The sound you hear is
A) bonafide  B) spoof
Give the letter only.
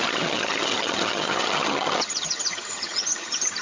B